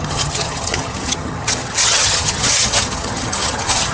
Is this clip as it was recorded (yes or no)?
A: no